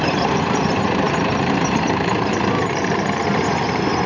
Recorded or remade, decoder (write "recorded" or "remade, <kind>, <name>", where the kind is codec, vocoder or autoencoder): remade, vocoder, BigVGAN v2